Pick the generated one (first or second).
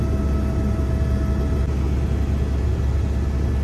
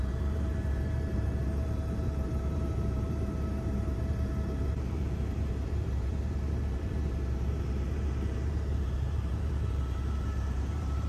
second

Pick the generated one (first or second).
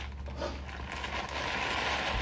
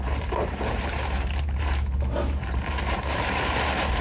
second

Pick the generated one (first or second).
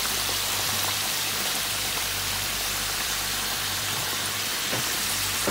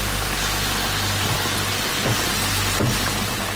first